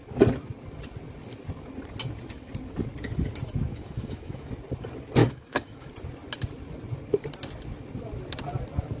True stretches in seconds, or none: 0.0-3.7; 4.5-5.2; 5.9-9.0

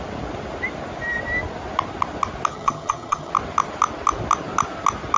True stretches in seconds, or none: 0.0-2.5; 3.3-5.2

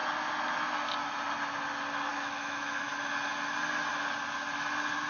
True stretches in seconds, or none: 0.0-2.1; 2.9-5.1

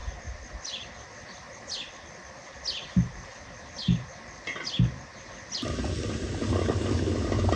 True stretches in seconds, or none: 0.0-7.6

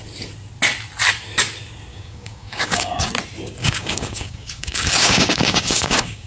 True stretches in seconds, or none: 0.0-1.9; 3.1-3.6

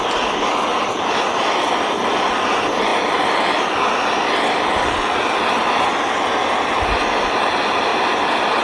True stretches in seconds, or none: 0.0-7.9